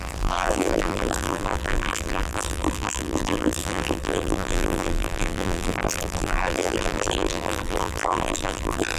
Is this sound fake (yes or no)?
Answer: yes